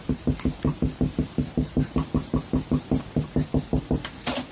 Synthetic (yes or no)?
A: yes